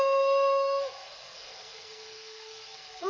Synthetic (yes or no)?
yes